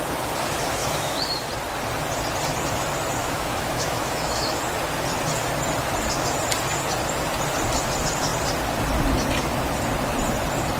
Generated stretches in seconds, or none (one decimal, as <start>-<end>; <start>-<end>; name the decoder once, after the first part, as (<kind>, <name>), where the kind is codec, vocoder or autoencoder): 0.8-1.3 (autoencoder, DAC-VAE); 3.2-4.6